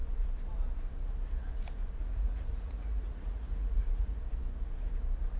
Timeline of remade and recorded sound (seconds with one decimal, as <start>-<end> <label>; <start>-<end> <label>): 0.0-2.0 recorded; 2.0-4.2 remade; 4.2-5.4 recorded